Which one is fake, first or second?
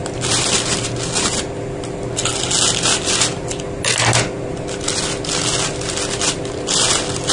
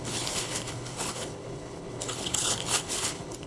second